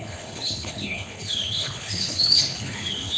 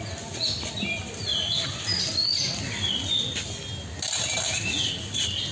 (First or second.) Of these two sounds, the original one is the second